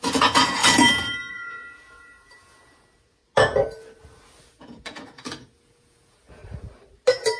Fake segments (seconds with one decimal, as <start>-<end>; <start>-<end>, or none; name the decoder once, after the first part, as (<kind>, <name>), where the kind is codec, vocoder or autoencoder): 0.0-0.6 (vocoder, Vocos); 1.3-3.2; 4.5-6.4